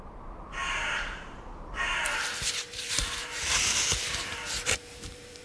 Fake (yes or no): yes